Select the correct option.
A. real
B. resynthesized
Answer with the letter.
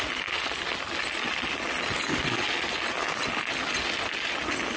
A